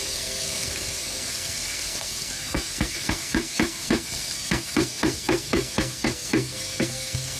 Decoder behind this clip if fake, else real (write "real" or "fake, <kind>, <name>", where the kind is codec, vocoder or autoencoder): fake, codec, SNAC